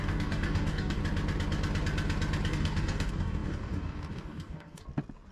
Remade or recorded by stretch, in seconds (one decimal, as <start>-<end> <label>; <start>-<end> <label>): 0.0-1.0 remade; 1.0-2.5 recorded; 2.5-4.8 remade; 4.8-5.3 recorded